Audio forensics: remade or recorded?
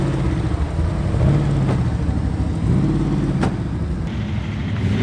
recorded